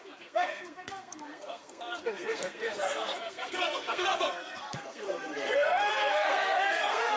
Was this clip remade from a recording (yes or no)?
yes